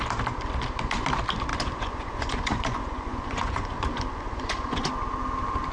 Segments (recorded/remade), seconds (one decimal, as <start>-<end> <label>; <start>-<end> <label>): 0.0-1.5 recorded; 1.5-4.9 remade; 4.9-5.7 recorded